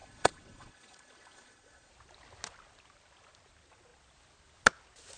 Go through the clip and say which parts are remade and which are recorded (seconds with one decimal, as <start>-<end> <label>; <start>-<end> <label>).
0.0-1.9 remade; 1.9-5.2 recorded